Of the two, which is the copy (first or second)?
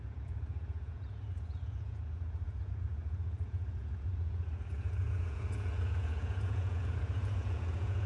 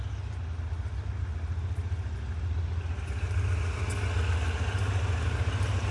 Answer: first